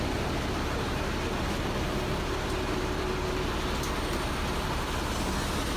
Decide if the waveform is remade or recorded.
recorded